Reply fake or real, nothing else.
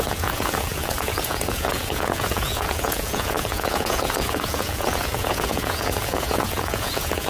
fake